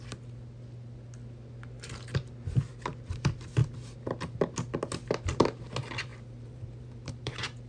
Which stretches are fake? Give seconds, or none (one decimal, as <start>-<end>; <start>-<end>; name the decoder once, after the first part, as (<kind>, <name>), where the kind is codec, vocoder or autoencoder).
6.1-7.7 (vocoder, BigVGAN v2)